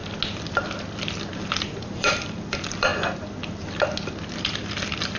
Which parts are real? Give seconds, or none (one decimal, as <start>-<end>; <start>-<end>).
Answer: 0.0-1.3; 2.9-4.4